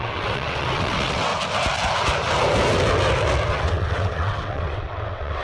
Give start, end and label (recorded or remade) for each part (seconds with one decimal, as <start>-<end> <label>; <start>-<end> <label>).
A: 0.0-1.3 remade; 1.3-3.5 recorded; 3.5-5.4 remade